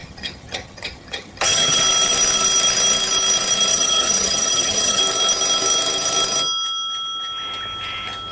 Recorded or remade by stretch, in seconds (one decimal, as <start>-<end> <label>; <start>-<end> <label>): 0.0-1.8 remade; 1.8-3.7 recorded; 3.7-5.0 remade; 5.0-8.3 recorded